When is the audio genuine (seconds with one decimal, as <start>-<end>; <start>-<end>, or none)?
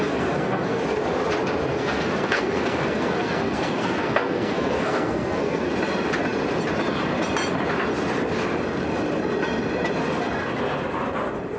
0.8-1.7; 5.7-11.6